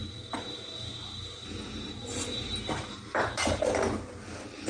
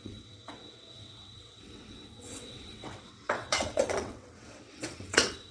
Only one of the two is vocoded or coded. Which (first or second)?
second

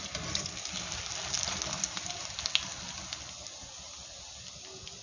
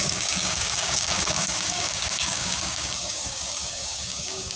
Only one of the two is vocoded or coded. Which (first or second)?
second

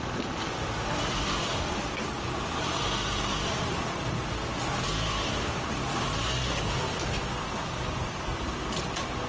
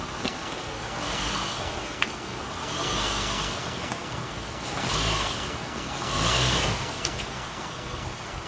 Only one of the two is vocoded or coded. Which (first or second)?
second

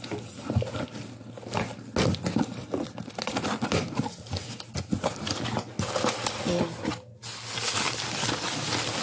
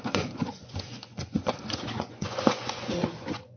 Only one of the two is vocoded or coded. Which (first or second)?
second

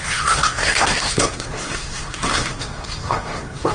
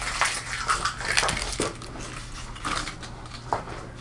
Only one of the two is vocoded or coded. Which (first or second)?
first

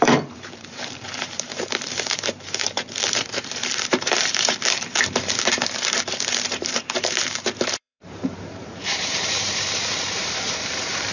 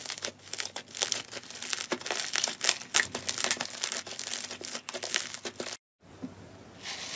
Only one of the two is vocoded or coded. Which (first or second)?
first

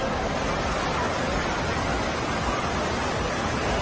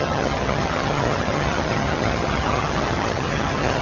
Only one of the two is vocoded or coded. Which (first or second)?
second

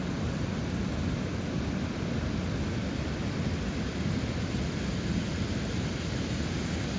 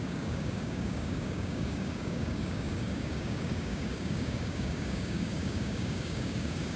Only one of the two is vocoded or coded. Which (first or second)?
second